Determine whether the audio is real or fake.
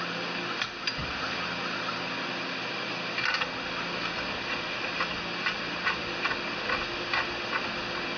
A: real